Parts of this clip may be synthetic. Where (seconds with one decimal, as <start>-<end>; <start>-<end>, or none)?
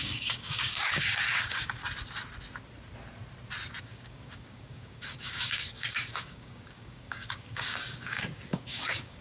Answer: 0.0-1.8; 3.8-9.2